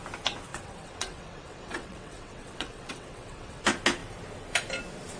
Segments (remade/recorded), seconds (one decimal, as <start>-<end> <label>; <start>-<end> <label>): 0.0-0.5 recorded; 0.5-3.6 remade; 3.6-5.2 recorded